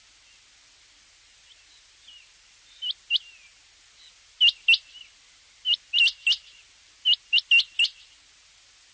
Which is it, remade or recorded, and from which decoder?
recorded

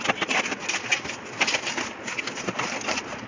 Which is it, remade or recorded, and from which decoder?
recorded